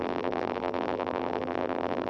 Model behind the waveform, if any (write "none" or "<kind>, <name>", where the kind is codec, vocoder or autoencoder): vocoder, BigVGAN v2